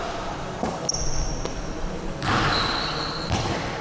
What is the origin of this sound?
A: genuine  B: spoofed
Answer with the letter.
A